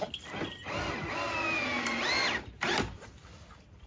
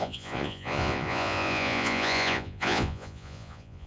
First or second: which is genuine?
first